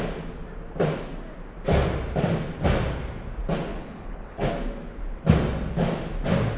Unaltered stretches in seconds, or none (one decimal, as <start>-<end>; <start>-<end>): 0.0-3.7; 4.5-6.6